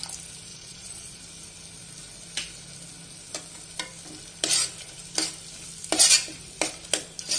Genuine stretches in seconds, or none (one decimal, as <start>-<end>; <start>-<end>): 0.0-0.5; 1.2-7.4